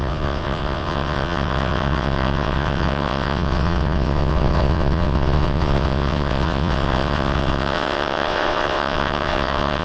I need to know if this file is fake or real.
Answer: fake